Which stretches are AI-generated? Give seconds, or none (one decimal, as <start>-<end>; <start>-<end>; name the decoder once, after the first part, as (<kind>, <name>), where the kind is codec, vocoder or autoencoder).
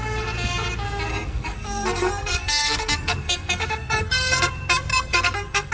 1.1-4.5 (codec, SNAC); 4.9-5.7